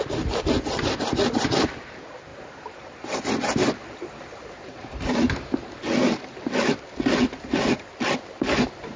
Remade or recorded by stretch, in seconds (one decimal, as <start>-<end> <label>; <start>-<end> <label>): 0.0-9.0 recorded